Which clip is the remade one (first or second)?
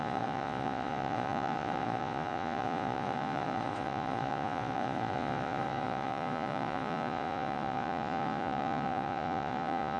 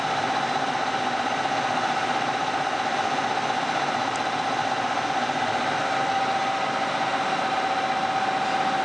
first